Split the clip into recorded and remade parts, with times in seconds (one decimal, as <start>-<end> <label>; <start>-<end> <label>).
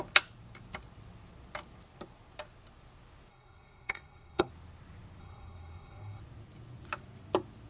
0.0-3.3 recorded; 3.3-4.5 remade; 4.5-5.2 recorded; 5.2-6.2 remade; 6.2-7.7 recorded